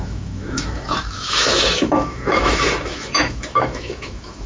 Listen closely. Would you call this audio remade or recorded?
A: remade